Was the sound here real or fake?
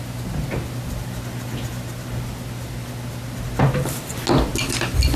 real